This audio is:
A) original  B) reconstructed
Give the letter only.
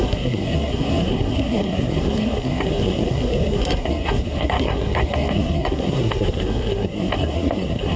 B